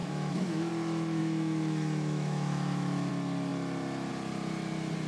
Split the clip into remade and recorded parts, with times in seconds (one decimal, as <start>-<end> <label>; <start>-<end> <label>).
0.0-0.7 remade; 0.7-1.2 recorded; 1.2-3.1 remade; 3.1-5.1 recorded